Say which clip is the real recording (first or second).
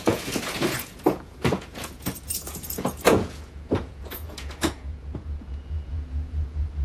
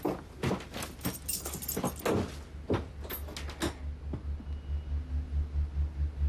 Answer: second